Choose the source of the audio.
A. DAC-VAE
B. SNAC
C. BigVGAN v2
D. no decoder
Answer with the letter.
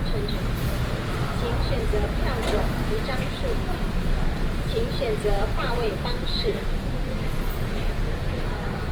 C